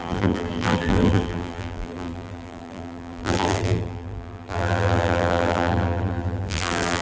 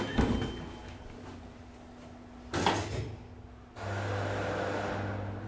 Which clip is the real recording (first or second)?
second